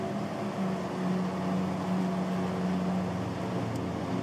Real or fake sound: real